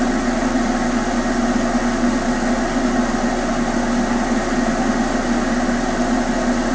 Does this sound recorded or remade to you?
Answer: recorded